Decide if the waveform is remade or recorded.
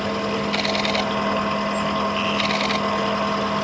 recorded